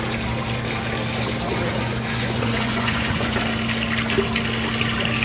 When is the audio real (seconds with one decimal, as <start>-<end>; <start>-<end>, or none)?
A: 0.0-1.7; 3.4-5.2